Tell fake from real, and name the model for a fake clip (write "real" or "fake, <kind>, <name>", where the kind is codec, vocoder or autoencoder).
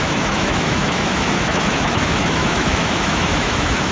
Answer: fake, autoencoder, DAC-VAE